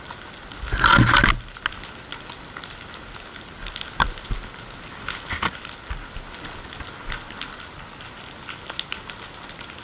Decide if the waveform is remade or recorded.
recorded